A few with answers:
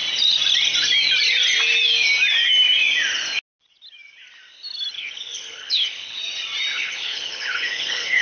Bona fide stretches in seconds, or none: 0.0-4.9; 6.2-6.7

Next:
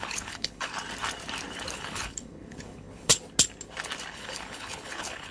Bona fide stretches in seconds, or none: 0.7-1.7; 3.1-4.1

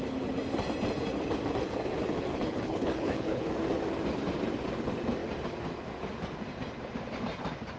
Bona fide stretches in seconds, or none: 0.0-2.3; 3.5-7.8